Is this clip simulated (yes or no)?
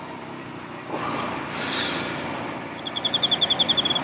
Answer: no